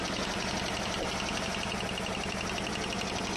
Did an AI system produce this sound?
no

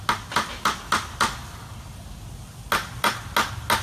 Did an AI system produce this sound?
no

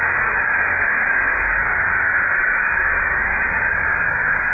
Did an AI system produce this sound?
yes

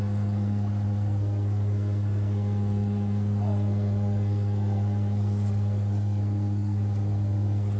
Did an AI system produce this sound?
yes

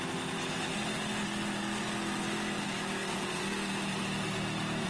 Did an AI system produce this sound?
no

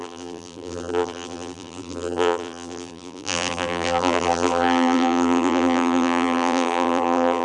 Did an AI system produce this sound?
yes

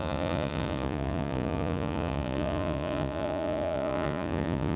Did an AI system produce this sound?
yes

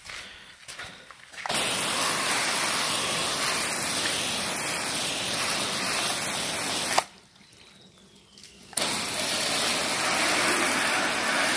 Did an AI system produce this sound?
no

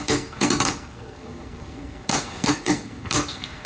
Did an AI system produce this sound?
yes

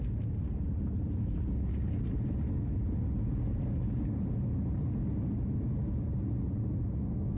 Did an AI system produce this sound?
no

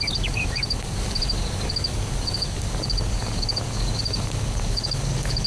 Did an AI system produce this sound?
yes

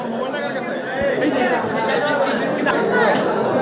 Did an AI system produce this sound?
no